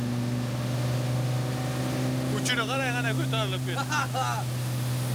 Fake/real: real